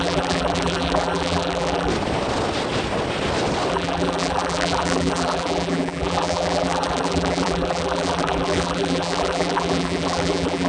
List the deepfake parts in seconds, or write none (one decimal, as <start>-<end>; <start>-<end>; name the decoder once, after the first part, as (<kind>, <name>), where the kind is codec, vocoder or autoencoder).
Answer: 0.0-1.9 (vocoder, BigVGAN v2); 3.7-10.7